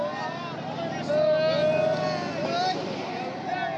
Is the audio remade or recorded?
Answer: recorded